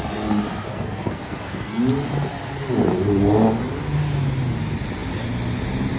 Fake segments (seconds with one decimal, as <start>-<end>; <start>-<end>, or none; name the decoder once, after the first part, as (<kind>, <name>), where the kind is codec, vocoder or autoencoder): 0.7-1.8 (codec, SNAC)